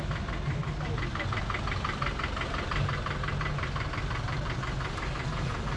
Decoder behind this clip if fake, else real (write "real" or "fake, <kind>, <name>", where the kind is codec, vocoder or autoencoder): real